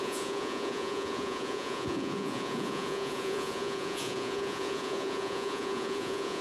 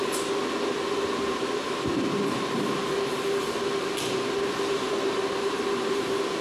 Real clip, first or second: second